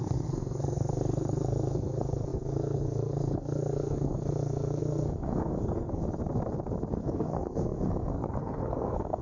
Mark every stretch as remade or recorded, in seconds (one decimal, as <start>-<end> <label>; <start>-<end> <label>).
0.0-6.0 remade; 6.0-6.9 recorded; 6.9-9.2 remade